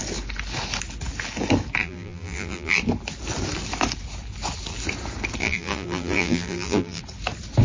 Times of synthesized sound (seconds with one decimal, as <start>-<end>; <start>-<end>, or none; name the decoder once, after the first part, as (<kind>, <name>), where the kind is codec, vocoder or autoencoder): 1.8-2.8 (vocoder, BigVGAN v2); 5.4-7.0